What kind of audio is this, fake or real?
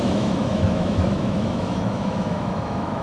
fake